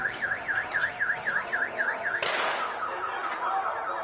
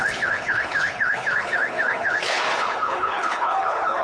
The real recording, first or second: first